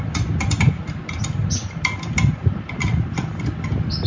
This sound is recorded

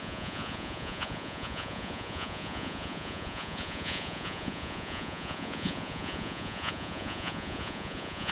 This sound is remade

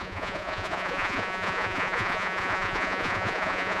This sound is remade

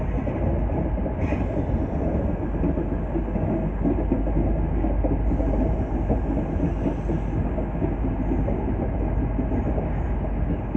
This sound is recorded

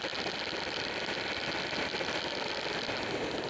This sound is recorded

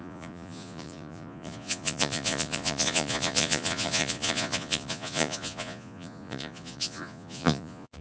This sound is remade